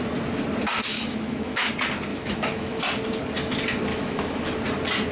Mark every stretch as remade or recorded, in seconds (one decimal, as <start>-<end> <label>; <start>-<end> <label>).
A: 0.0-0.9 recorded; 0.9-1.7 remade; 1.7-2.1 recorded; 2.1-2.8 remade; 2.8-3.9 recorded; 3.9-4.6 remade; 4.6-5.1 recorded